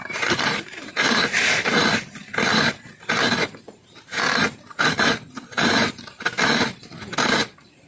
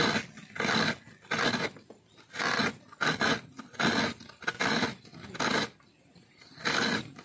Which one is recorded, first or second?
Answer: second